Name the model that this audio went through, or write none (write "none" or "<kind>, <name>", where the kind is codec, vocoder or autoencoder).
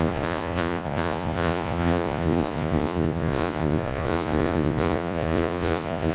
vocoder, Vocos